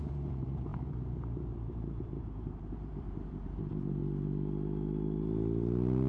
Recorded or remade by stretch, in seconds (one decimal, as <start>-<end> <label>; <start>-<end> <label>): 0.0-4.0 remade; 4.0-6.1 recorded